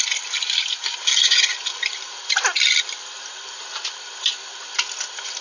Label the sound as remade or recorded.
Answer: recorded